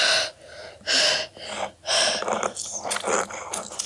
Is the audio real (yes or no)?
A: yes